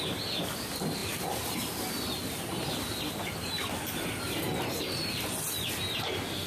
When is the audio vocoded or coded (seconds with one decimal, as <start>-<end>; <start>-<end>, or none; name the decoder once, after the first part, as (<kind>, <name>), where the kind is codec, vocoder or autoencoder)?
none